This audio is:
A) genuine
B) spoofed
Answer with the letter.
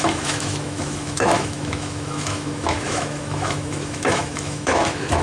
B